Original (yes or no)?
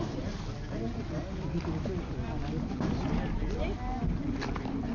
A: yes